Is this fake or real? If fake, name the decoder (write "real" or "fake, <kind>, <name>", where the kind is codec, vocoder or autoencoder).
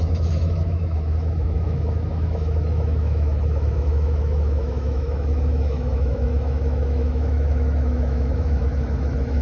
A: fake, autoencoder, DAC-VAE